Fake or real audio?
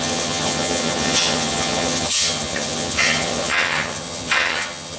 fake